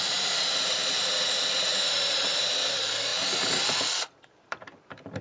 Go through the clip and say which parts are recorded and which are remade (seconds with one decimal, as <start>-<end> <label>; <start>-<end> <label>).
0.0-3.1 remade; 3.1-4.0 recorded; 4.0-5.2 remade